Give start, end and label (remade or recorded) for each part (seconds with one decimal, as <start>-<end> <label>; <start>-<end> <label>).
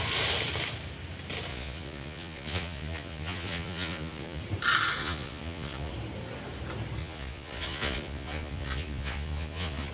0.0-1.5 recorded; 1.5-4.4 remade; 4.4-5.0 recorded; 5.0-5.9 remade; 5.9-7.0 recorded; 7.0-9.9 remade